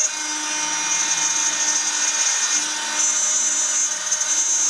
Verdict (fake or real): real